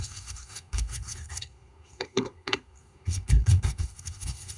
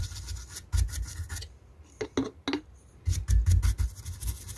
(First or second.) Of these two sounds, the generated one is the first